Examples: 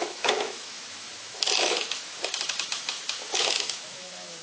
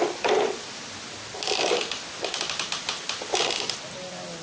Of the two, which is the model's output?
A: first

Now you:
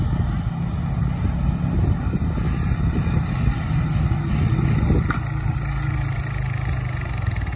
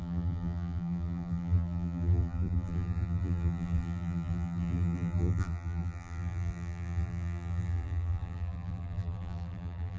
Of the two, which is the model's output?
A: second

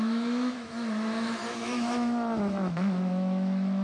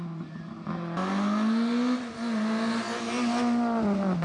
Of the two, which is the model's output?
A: first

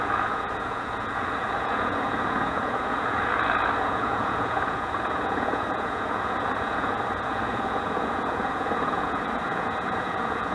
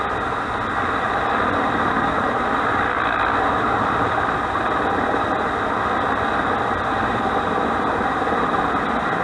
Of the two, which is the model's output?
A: first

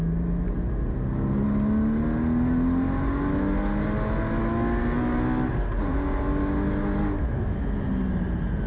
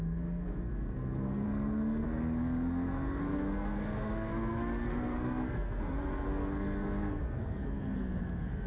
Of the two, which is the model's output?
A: second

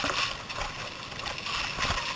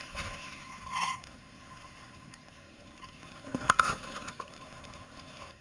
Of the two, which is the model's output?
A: second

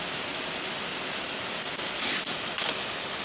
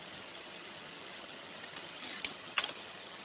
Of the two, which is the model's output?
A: second